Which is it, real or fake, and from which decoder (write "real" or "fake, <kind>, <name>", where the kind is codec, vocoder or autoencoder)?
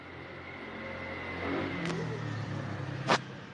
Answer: real